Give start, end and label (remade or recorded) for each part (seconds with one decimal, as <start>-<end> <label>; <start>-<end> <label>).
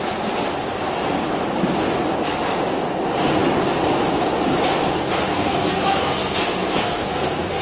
0.0-5.3 recorded; 5.3-7.6 remade